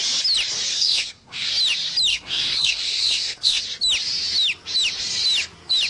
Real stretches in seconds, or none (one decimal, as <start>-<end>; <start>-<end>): 0.0-0.7; 1.5-2.1; 3.6-5.9